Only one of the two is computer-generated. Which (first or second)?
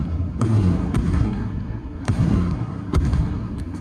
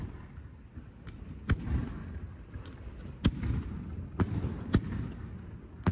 first